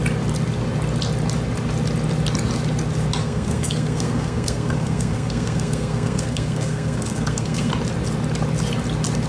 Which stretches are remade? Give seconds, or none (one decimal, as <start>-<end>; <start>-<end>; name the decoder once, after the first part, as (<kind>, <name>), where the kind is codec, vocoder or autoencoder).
3.2-7.7 (codec, SNAC)